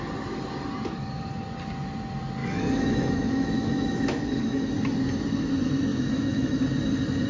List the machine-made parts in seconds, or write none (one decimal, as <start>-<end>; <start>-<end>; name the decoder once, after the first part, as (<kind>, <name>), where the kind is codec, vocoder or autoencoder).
2.4-4.7 (autoencoder, DAC-VAE); 5.9-6.6